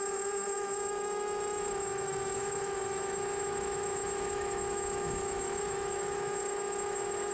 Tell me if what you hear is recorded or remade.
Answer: remade